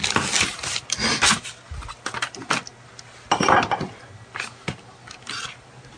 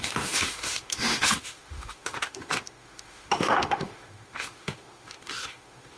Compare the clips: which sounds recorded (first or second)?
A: first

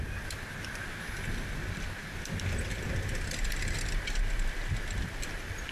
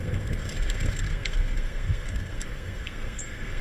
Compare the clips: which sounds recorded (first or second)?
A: first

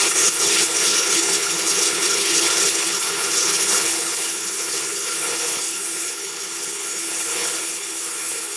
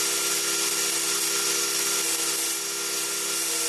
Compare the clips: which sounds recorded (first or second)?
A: second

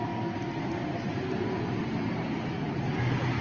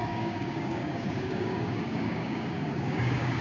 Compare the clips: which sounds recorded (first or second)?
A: first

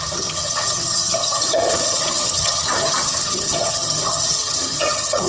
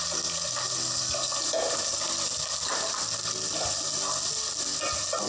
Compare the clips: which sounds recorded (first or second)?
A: second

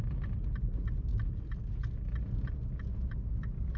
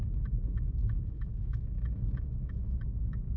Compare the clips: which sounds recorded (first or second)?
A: first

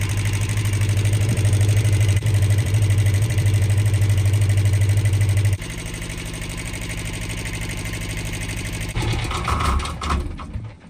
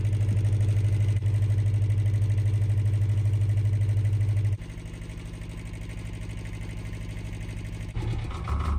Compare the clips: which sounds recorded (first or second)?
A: second